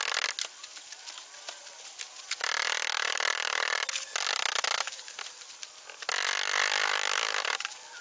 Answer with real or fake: real